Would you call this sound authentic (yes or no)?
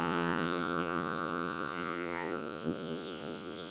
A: no